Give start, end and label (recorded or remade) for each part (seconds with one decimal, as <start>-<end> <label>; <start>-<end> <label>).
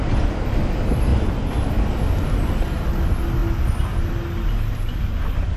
0.0-5.6 recorded